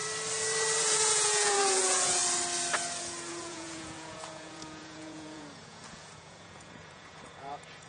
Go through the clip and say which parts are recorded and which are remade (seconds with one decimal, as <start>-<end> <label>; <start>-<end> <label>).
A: 0.0-0.8 recorded; 0.8-2.2 remade; 2.2-3.3 recorded; 3.3-7.9 remade